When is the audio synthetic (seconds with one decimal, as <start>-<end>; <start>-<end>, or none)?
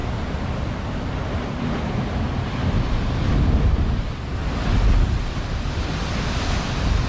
none